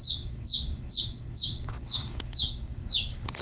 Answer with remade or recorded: remade